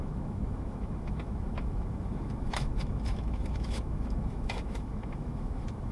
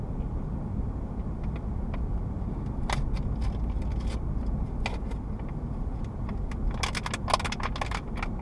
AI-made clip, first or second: first